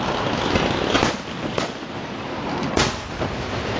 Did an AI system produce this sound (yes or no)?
no